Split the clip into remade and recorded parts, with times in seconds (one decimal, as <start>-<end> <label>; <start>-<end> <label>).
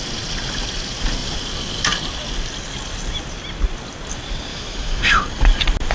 0.0-4.5 recorded; 4.5-5.0 remade; 5.0-5.9 recorded